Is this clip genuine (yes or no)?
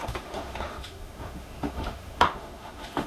no